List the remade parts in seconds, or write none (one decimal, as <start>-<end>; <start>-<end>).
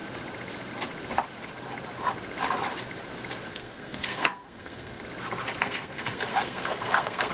3.5-5.0; 5.6-7.3